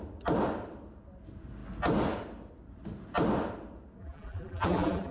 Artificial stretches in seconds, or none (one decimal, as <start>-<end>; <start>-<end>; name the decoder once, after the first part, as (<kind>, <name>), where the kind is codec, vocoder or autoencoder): 4.0-5.1 (vocoder, BigVGAN v2)